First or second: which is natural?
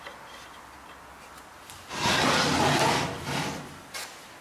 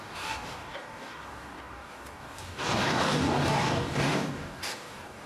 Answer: first